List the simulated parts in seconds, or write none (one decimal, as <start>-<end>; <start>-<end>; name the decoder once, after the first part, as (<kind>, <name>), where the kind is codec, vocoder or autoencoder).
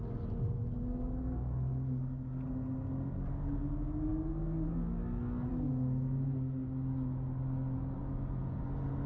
8.0-8.6 (vocoder, Vocos)